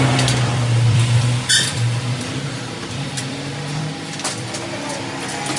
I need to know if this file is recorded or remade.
remade